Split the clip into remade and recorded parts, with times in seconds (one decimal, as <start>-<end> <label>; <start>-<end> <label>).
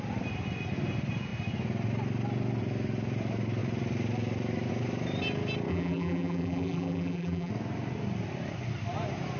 0.0-5.7 recorded; 5.7-7.5 remade; 7.5-9.4 recorded